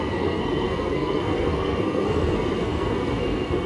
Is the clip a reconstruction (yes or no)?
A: yes